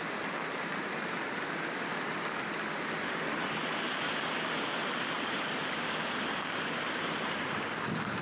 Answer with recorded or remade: remade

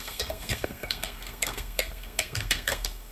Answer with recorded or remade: remade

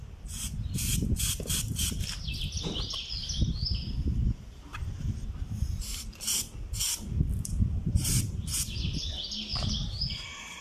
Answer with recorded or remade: remade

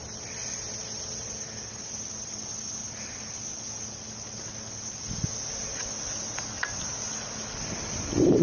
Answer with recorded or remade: recorded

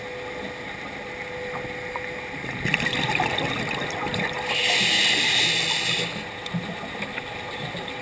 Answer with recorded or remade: recorded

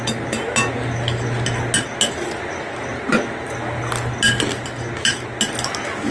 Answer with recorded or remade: recorded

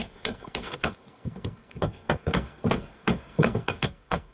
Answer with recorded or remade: remade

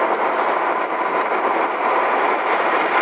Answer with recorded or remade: remade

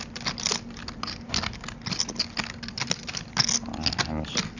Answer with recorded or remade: recorded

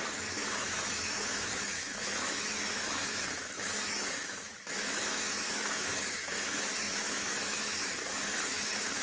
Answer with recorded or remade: remade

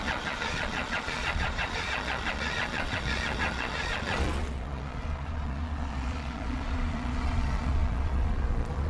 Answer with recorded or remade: remade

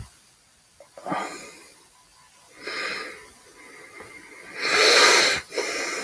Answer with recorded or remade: recorded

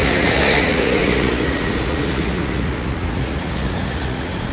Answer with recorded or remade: remade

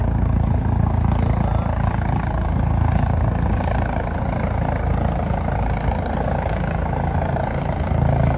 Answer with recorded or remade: recorded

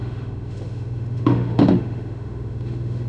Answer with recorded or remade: remade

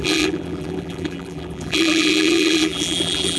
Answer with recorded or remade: remade